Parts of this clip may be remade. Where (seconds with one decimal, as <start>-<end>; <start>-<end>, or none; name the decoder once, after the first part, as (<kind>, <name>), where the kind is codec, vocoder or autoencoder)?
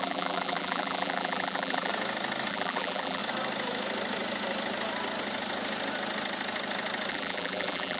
0.0-1.9 (vocoder, BigVGAN v2); 2.5-3.2; 7.1-8.0